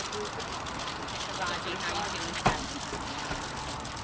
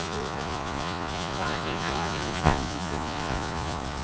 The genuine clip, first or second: first